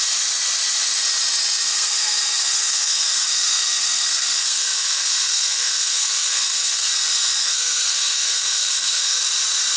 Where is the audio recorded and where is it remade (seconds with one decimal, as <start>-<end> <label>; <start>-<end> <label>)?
0.0-1.7 recorded; 1.7-6.9 remade; 6.9-7.4 recorded; 7.4-9.2 remade; 9.2-9.8 recorded